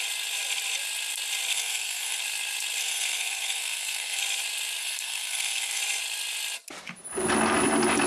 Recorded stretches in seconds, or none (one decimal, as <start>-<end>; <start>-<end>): 0.0-1.5; 2.2-2.8; 4.2-4.8; 5.8-8.1